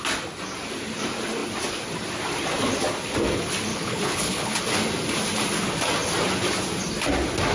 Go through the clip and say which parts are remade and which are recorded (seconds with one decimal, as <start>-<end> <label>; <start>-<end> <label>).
0.0-3.7 recorded; 3.7-4.6 remade; 4.6-7.5 recorded

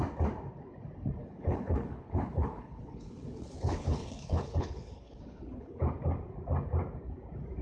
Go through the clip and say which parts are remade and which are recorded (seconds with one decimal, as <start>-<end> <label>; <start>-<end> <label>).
0.0-1.2 recorded; 1.2-5.8 remade; 5.8-7.6 recorded

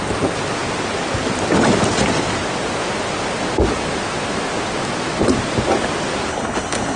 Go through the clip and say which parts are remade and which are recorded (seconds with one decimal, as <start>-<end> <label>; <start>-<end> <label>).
0.0-6.3 recorded; 6.3-7.0 remade

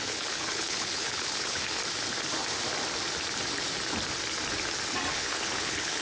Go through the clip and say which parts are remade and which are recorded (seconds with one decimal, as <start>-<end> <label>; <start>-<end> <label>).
0.0-1.8 remade; 1.8-5.1 recorded; 5.1-6.0 remade

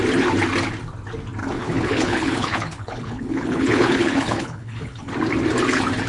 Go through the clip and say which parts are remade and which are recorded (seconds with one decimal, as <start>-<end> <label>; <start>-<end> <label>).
0.0-1.4 recorded; 1.4-5.1 remade; 5.1-6.1 recorded

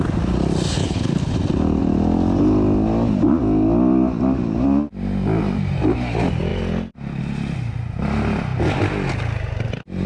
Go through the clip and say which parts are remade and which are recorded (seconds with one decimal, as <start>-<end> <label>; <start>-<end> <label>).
0.0-0.8 recorded; 0.8-1.3 remade; 1.3-10.1 recorded